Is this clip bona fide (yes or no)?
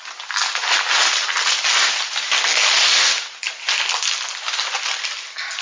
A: yes